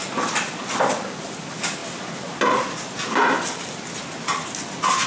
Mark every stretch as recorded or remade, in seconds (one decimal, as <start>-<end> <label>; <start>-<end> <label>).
0.0-5.1 recorded